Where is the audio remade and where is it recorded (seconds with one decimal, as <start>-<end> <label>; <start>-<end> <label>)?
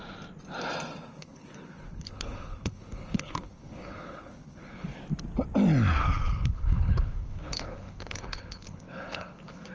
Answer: 0.0-1.1 recorded; 1.1-5.0 remade; 5.0-6.0 recorded; 6.0-9.7 remade